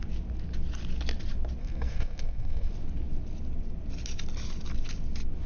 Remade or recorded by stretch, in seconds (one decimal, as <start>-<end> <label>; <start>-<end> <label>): 0.0-1.6 recorded; 1.6-2.7 remade; 2.7-5.5 recorded